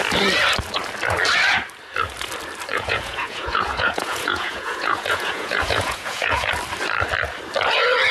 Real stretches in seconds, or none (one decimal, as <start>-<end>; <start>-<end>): 0.0-2.7; 6.5-8.1